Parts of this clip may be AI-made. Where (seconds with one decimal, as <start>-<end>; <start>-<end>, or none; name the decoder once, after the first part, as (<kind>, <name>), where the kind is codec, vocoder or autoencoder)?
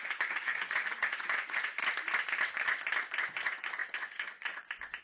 0.0-1.8 (vocoder, Vocos); 3.2-5.0